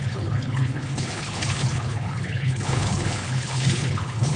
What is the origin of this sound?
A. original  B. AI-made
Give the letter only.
B